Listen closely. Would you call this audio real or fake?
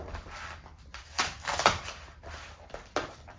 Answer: real